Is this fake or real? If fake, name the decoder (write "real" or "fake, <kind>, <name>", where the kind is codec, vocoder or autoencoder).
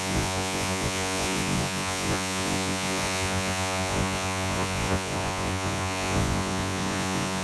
fake, vocoder, Vocos